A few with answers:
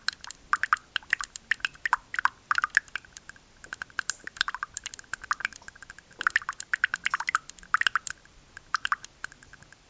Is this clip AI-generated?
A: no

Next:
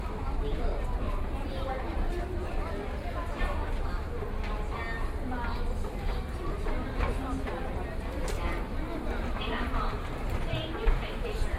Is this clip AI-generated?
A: no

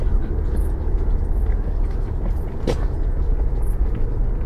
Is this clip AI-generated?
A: no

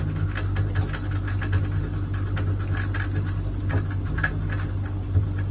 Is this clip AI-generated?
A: no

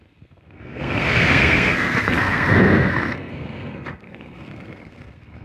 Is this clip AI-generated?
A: yes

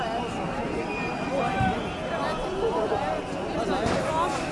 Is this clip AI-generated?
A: no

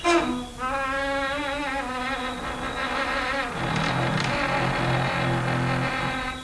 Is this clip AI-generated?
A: no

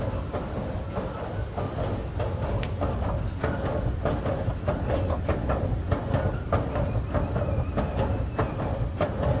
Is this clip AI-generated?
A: no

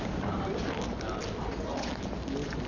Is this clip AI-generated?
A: no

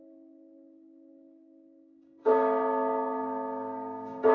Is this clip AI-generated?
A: yes